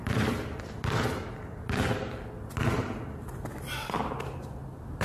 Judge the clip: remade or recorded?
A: recorded